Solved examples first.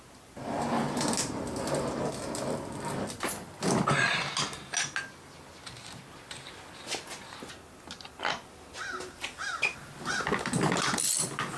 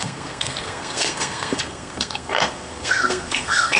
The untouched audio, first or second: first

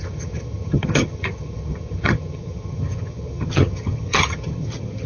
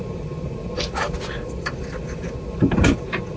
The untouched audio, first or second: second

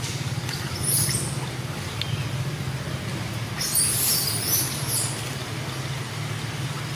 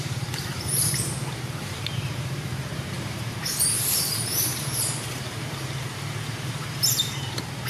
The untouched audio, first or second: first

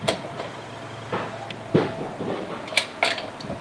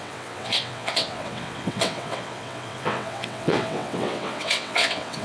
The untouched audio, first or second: first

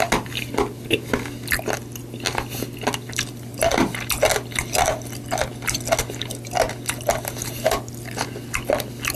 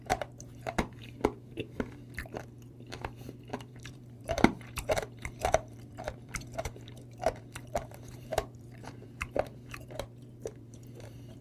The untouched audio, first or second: first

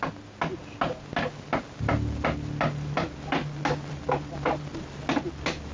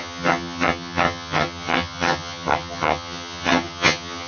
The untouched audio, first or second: first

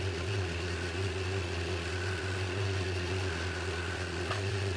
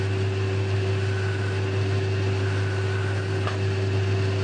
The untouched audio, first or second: second